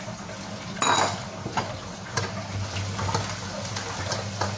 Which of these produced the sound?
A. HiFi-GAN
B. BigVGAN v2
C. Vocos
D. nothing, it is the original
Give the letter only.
D